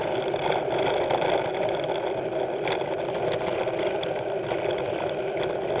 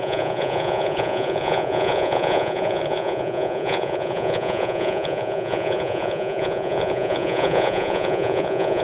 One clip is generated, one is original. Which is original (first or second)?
first